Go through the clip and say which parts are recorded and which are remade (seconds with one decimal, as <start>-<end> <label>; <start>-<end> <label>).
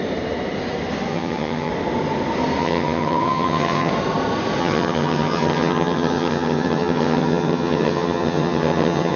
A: 0.0-1.1 recorded; 1.1-1.7 remade; 1.7-2.6 recorded; 2.6-3.9 remade; 3.9-4.6 recorded; 4.6-9.2 remade